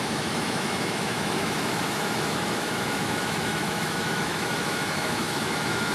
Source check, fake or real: fake